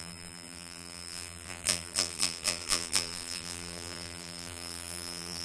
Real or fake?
fake